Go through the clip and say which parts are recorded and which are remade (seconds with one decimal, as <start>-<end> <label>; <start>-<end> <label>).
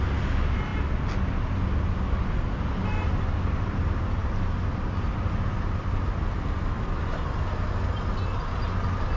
0.0-9.2 recorded